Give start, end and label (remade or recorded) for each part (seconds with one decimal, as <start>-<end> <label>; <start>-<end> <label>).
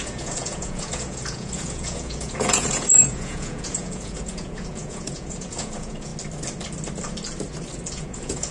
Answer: 0.0-6.1 remade; 6.1-7.9 recorded; 7.9-8.5 remade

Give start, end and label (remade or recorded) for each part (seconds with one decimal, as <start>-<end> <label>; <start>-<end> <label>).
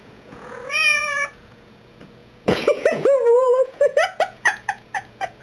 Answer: 0.0-5.4 remade